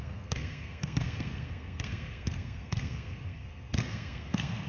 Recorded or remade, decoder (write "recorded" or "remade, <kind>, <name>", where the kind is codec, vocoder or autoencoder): remade, codec, SNAC